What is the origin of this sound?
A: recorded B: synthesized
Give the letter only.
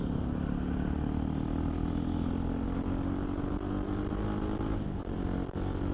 A